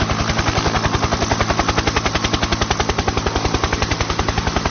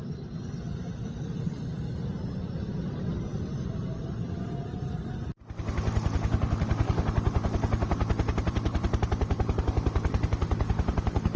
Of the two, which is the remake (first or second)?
second